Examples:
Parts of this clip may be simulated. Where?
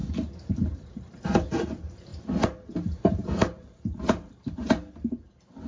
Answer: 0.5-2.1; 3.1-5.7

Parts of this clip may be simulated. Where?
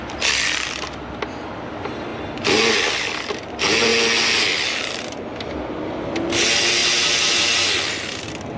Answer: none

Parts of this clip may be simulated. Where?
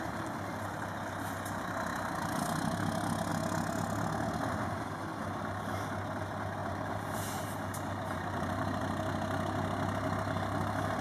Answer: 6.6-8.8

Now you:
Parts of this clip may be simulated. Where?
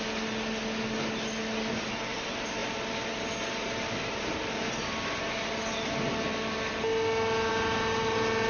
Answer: none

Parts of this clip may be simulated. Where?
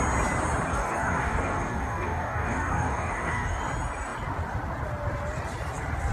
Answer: 0.7-3.6